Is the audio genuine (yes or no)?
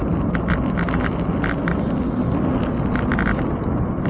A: yes